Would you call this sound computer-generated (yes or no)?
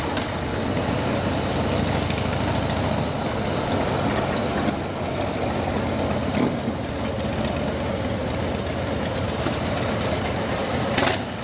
no